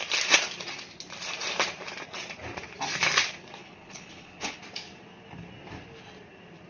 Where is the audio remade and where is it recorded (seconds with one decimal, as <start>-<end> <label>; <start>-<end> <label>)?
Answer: 0.0-3.6 recorded; 3.6-4.6 remade; 4.6-6.7 recorded